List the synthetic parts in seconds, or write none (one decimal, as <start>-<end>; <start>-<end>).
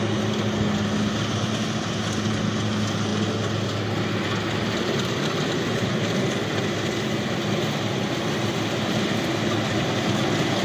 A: 0.0-3.1; 4.8-10.6